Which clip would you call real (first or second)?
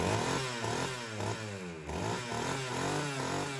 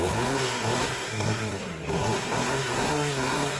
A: first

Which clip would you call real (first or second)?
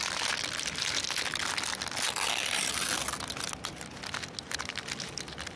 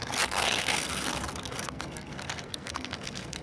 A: first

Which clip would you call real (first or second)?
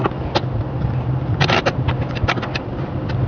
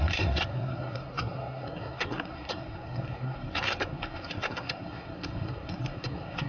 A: first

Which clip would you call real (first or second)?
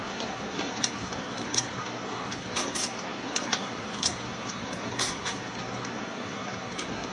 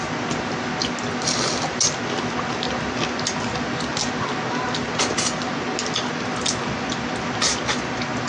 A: second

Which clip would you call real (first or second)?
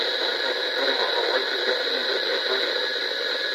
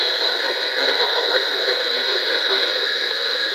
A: first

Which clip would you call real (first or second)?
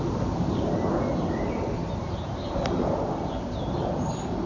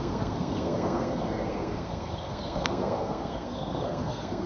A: first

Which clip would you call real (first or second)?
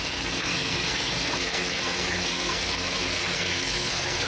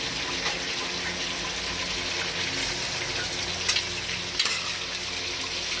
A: second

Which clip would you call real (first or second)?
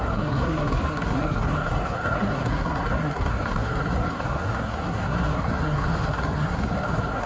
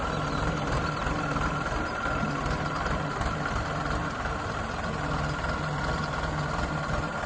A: second